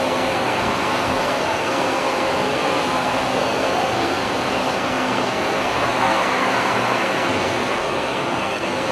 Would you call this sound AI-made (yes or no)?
yes